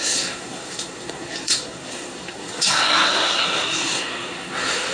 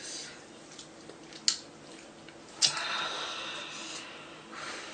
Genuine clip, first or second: second